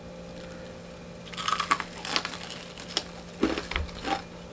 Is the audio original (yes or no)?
yes